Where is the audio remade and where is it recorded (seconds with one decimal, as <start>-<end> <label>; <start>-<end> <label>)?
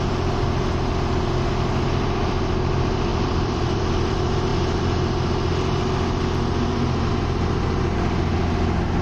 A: 0.0-3.1 recorded; 3.1-4.1 remade; 4.1-9.0 recorded